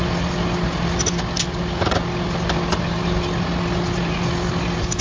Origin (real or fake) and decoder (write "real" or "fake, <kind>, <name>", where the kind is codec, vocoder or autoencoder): real